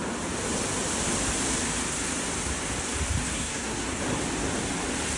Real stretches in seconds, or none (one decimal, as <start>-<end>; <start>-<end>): 0.0-3.2; 4.0-5.2